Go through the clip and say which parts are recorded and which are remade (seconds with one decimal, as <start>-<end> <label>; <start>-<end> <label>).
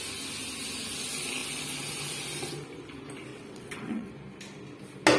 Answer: 0.0-3.3 recorded; 3.3-4.1 remade; 4.1-5.2 recorded